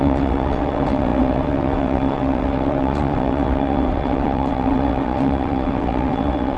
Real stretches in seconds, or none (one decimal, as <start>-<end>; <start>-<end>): none